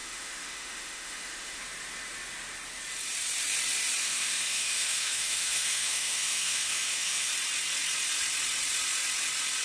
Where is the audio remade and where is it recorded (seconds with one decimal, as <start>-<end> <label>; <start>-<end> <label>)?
0.0-1.6 remade; 1.6-4.0 recorded; 4.0-7.3 remade; 7.3-9.6 recorded